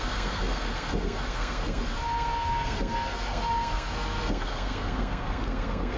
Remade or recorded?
remade